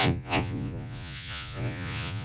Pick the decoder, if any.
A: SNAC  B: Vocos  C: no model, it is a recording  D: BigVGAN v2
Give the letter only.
B